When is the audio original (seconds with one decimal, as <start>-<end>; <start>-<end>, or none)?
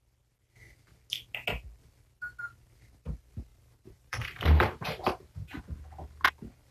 0.0-3.5; 5.6-6.7